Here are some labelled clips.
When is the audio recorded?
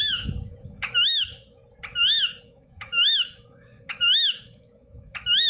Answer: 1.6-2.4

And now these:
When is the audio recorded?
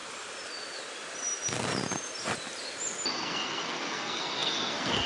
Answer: 0.0-3.1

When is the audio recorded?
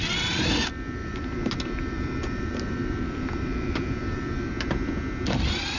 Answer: 0.0-1.0; 4.5-5.8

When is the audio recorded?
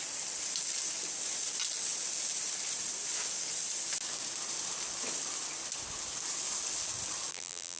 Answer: 0.0-7.3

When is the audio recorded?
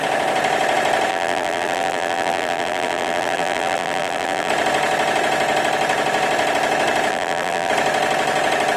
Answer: 0.0-1.1; 4.5-7.1; 7.7-8.8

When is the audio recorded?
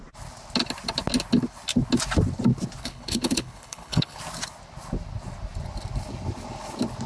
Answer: 0.0-2.8; 4.2-7.1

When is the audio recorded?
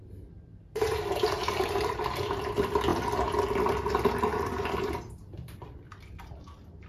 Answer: 0.0-0.5; 2.5-4.3; 5.1-6.9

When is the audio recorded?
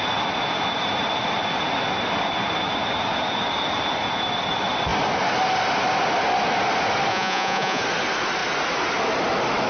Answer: 0.0-7.1; 7.8-9.7